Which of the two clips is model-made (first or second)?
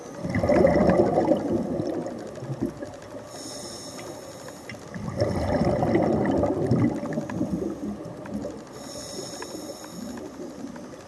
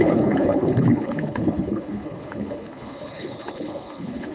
second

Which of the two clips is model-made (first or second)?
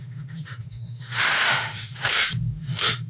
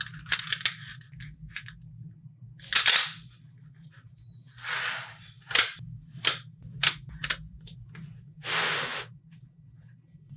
first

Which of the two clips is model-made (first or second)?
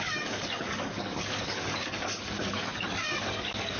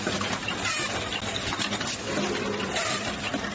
first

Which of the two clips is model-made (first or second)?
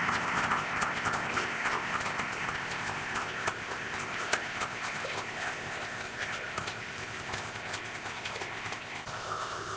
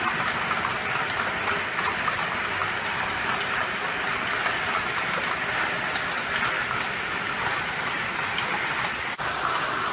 first